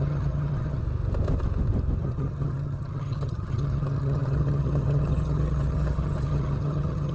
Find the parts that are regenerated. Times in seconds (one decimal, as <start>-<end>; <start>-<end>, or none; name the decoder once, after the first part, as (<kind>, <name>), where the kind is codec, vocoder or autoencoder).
0.0-0.8 (vocoder, HiFi-GAN); 2.0-7.1